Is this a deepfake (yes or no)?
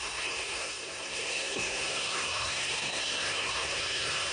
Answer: yes